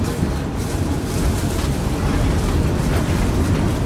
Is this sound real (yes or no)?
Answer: no